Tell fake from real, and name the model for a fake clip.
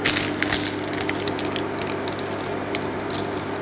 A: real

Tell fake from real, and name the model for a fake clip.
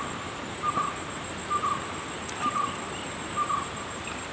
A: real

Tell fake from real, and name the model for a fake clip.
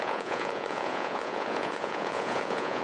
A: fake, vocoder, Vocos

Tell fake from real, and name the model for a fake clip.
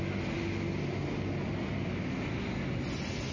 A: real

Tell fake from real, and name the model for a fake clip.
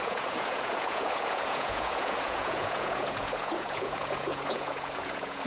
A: fake, vocoder, Vocos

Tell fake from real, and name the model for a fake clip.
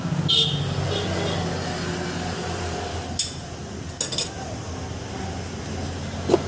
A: real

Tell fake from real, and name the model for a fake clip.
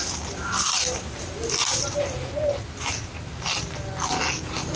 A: real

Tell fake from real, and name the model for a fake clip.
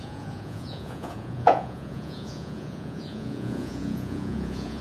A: fake, vocoder, Vocos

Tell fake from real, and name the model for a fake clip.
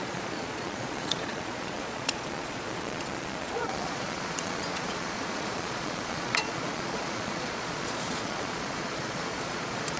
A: fake, vocoder, Vocos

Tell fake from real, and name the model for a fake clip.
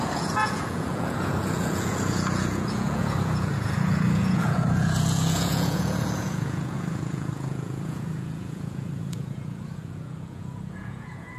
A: fake, vocoder, Vocos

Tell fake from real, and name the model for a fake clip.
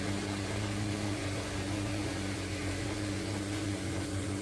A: fake, vocoder, Vocos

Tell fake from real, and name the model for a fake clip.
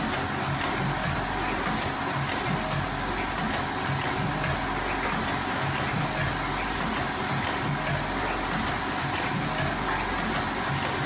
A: real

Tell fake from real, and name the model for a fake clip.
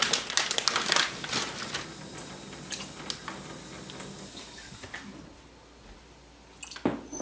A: real